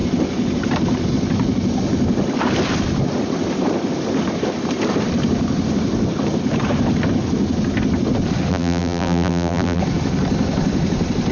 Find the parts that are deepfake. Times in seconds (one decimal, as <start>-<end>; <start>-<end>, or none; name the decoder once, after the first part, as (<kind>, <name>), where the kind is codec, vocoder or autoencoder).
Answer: 8.5-9.8 (vocoder, BigVGAN v2)